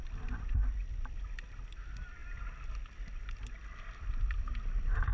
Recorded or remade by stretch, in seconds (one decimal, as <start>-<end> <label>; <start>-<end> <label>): 0.0-5.1 recorded